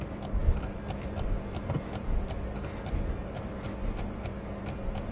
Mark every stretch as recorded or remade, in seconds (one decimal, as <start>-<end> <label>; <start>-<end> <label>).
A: 0.0-5.1 recorded